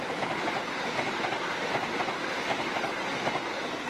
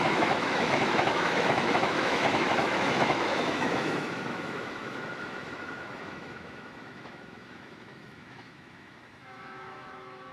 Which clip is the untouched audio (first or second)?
first